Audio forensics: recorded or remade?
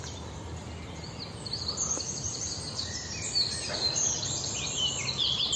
remade